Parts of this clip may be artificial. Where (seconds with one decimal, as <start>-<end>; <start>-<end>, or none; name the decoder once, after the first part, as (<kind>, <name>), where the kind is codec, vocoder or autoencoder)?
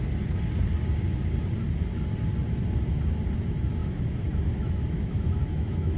3.8-6.0 (autoencoder, DAC-VAE)